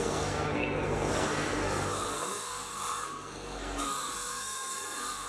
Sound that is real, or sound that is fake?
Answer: fake